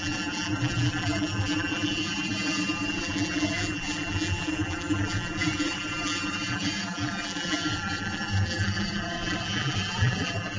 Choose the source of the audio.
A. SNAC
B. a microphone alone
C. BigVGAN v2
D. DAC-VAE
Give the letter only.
C